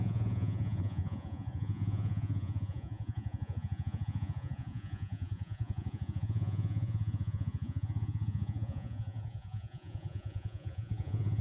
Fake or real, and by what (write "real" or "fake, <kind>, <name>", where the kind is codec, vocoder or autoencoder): fake, vocoder, Vocos